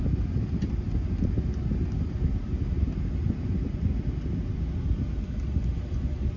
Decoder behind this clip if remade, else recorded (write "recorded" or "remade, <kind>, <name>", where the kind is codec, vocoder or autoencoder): recorded